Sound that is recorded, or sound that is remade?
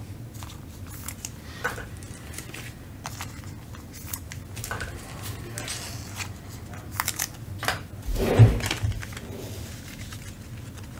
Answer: recorded